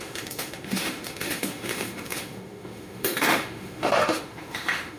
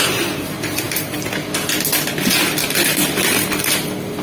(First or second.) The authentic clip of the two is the second